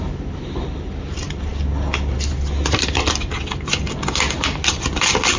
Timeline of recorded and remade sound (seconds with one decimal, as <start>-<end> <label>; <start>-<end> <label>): 0.0-5.4 recorded